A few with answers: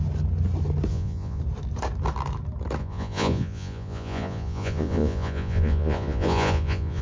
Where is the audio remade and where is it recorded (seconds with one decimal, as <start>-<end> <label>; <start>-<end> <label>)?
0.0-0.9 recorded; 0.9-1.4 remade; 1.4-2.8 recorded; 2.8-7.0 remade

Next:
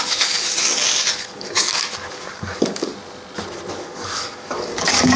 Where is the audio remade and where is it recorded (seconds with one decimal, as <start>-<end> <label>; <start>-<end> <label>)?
0.0-2.9 remade; 2.9-3.7 recorded; 3.7-5.2 remade

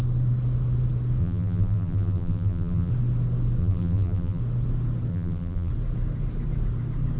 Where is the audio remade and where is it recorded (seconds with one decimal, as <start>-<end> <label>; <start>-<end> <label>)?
0.0-1.2 recorded; 1.2-2.9 remade; 2.9-3.6 recorded; 3.6-4.4 remade; 4.4-5.1 recorded; 5.1-5.7 remade; 5.7-7.2 recorded

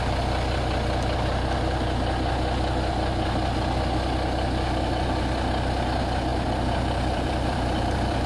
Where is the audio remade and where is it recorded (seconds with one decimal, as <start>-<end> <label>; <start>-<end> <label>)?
0.0-6.3 recorded; 6.3-8.3 remade

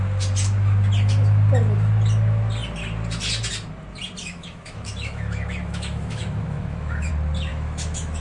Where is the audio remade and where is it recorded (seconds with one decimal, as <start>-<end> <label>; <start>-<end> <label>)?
0.0-4.2 recorded; 4.2-7.1 remade; 7.1-7.5 recorded; 7.5-8.2 remade

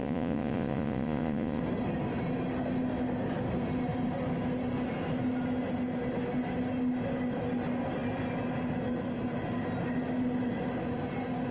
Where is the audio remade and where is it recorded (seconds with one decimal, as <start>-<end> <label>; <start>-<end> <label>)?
0.0-1.6 remade; 1.6-11.5 recorded

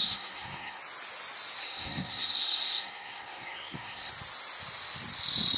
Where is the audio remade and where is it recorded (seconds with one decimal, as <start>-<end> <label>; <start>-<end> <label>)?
0.0-0.8 remade; 0.8-1.6 recorded; 1.6-4.1 remade; 4.1-5.6 recorded